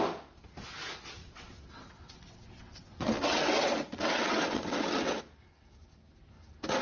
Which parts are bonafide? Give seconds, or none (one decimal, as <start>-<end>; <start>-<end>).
0.0-1.2; 5.2-6.8